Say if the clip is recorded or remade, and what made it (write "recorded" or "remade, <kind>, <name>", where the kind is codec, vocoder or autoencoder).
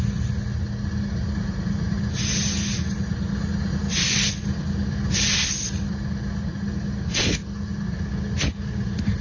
recorded